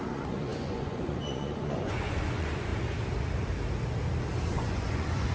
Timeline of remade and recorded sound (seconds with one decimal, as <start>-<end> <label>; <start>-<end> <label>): 0.0-2.7 remade; 2.7-4.5 recorded; 4.5-5.3 remade